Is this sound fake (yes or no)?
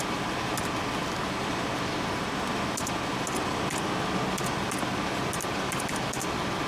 no